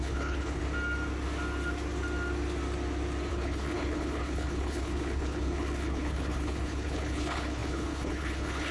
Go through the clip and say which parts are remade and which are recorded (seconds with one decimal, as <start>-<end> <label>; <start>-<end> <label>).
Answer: 0.0-0.6 remade; 0.6-3.3 recorded; 3.3-8.7 remade